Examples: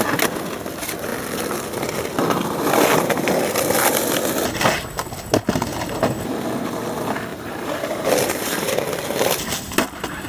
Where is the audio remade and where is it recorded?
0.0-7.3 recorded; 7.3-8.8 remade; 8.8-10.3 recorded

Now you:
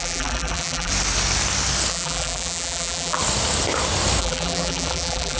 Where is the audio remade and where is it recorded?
0.0-0.9 remade; 0.9-1.9 recorded; 1.9-3.2 remade; 3.2-4.2 recorded; 4.2-5.4 remade